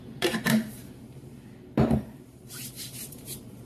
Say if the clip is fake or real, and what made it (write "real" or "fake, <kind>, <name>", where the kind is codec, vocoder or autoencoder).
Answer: fake, vocoder, BigVGAN v2